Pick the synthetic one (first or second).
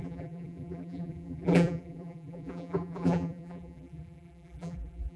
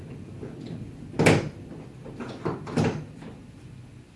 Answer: first